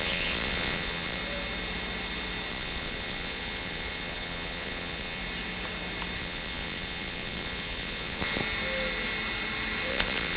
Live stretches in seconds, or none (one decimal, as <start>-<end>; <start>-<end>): 1.2-2.5; 5.2-6.2; 8.4-9.9